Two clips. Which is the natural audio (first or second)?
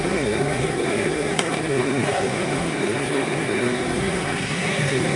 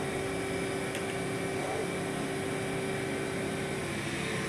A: second